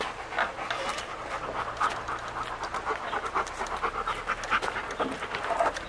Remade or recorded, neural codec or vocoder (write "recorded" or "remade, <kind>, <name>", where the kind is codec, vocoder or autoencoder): recorded